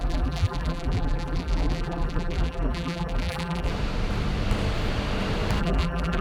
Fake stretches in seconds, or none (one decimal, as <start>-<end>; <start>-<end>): 0.0-3.7; 5.6-6.2